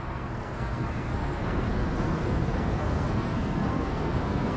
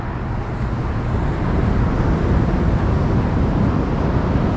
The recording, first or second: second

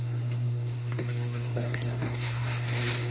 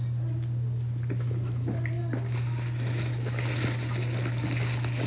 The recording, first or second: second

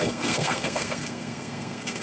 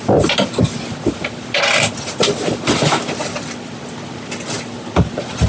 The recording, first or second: second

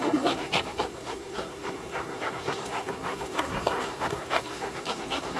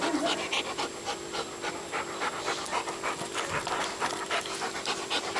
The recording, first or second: second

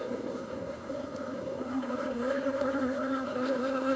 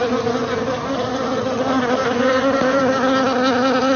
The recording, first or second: second